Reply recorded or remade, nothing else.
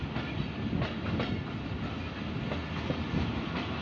recorded